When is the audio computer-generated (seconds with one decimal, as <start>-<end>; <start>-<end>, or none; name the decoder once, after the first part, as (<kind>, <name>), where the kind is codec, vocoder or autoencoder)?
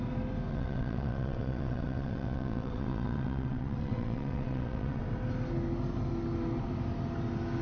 0.5-5.0 (vocoder, WaveNeXt)